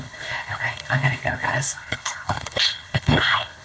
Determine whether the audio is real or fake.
fake